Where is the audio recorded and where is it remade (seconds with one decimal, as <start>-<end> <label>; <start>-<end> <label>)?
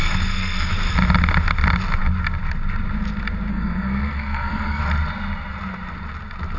0.0-0.7 remade; 0.7-3.5 recorded; 3.5-4.8 remade; 4.8-6.6 recorded